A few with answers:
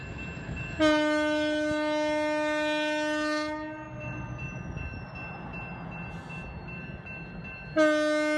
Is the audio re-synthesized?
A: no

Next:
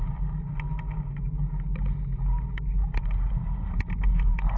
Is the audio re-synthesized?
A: no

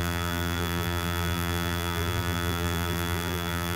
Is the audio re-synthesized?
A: yes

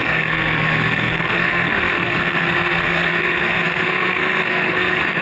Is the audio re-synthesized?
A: yes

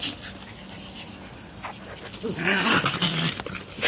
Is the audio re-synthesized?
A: no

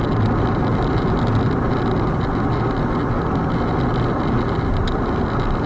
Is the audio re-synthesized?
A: no